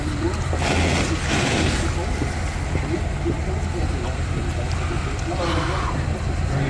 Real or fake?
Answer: real